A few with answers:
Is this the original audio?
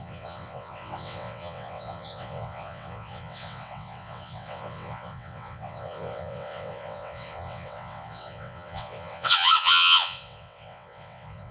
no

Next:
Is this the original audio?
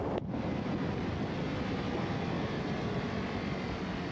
yes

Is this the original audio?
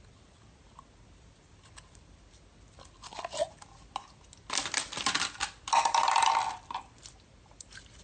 yes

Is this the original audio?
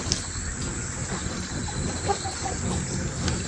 yes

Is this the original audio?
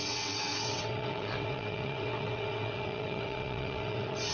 no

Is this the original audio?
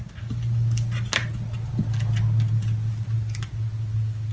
yes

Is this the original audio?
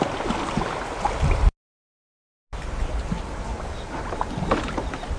yes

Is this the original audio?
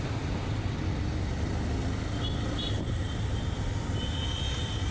yes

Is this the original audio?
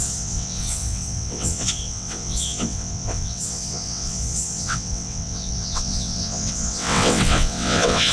no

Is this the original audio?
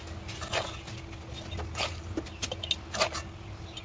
yes